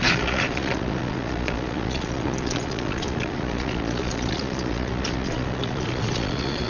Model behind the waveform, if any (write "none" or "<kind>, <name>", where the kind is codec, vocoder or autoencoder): vocoder, Vocos